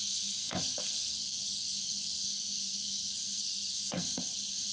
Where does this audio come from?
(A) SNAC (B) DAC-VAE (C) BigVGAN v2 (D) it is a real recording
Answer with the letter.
A